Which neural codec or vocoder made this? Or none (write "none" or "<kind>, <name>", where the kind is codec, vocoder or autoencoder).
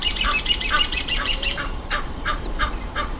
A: vocoder, BigVGAN v2